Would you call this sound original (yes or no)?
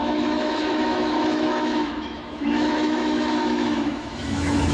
no